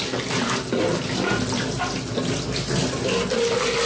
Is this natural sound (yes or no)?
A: yes